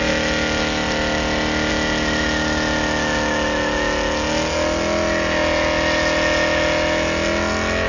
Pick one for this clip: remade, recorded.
recorded